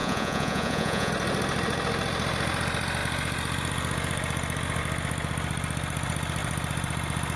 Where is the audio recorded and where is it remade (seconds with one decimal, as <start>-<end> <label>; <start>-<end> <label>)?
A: 0.0-1.1 remade; 1.1-7.4 recorded